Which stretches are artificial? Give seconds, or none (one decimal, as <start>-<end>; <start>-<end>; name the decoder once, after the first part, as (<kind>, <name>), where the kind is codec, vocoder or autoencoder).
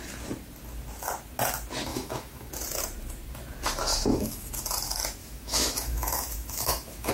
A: 1.9-2.5 (autoencoder, DAC-VAE); 3.9-4.5; 5.2-7.1